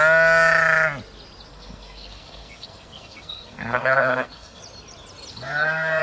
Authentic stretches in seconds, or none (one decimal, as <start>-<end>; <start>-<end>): 0.0-1.5; 4.6-5.3